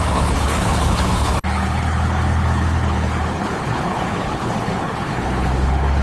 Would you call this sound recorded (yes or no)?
no